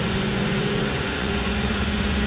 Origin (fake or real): fake